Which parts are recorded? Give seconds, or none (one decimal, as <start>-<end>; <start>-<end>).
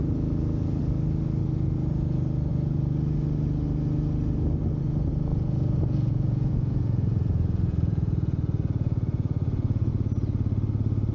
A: 0.0-5.3; 9.9-11.1